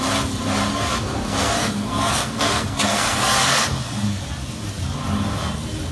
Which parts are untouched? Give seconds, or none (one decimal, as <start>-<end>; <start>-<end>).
0.0-0.7; 4.2-5.9